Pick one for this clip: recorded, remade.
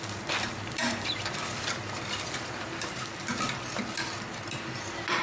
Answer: remade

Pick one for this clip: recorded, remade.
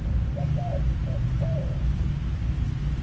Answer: remade